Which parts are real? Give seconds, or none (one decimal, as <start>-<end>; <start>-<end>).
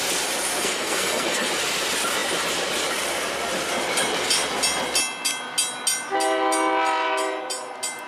0.0-0.6; 1.5-8.1